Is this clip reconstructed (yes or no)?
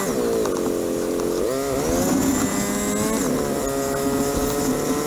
no